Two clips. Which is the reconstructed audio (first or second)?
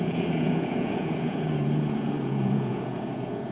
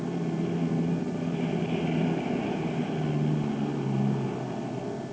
first